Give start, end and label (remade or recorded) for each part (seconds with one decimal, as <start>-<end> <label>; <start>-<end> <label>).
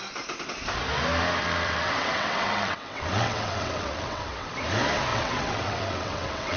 0.0-1.4 recorded; 1.4-4.5 remade; 4.5-5.1 recorded; 5.1-6.6 remade